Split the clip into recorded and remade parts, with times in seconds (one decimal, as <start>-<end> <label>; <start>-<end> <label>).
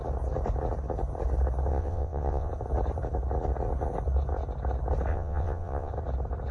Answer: 0.0-1.7 recorded; 1.7-2.5 remade; 2.5-5.1 recorded; 5.1-5.9 remade; 5.9-6.5 recorded